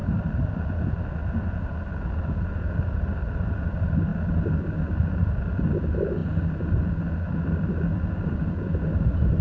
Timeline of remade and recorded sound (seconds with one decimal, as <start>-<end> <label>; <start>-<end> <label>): 0.0-9.4 recorded